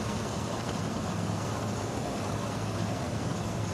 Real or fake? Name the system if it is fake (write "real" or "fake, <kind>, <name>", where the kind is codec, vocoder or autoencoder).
fake, codec, SNAC